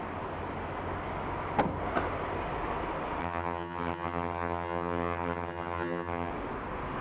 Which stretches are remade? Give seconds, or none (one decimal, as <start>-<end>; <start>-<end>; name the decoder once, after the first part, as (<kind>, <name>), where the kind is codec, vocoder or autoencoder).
3.2-6.3 (vocoder, HiFi-GAN)